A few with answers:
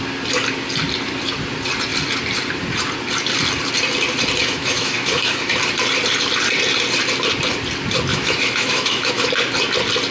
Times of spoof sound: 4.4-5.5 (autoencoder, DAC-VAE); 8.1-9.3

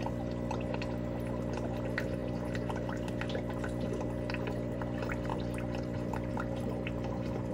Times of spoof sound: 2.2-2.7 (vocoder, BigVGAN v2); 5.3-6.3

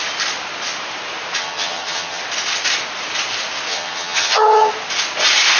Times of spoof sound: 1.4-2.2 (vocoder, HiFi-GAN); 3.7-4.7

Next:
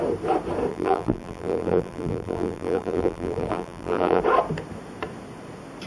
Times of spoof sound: 0.7-4.2 (vocoder, BigVGAN v2)